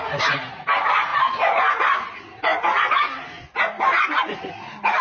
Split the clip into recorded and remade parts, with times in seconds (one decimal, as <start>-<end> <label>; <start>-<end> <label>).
0.0-5.0 recorded